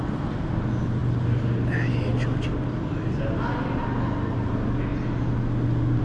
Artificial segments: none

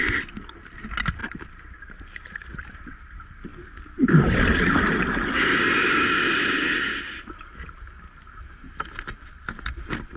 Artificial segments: none

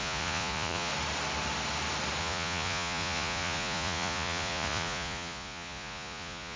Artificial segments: 0.0-0.9 (vocoder, Vocos); 2.2-6.6